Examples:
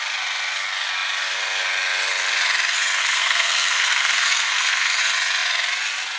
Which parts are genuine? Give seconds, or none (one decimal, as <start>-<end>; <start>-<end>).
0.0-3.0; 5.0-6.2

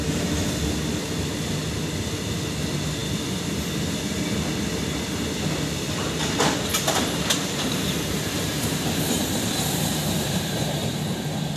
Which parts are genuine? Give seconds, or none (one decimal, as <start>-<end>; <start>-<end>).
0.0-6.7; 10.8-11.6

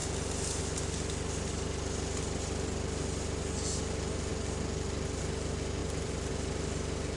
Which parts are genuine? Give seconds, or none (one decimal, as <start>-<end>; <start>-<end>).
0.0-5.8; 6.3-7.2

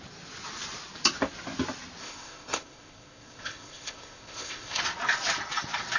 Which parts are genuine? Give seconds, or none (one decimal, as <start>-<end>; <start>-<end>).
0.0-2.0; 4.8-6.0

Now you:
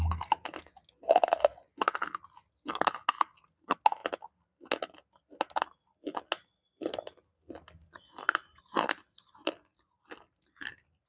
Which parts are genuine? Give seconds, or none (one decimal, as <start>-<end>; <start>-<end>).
0.0-11.1

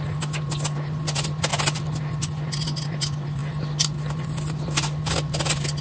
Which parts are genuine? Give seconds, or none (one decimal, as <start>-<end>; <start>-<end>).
0.0-5.8